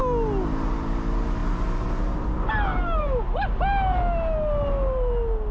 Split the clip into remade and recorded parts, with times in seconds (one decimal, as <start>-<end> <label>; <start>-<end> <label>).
0.0-5.5 recorded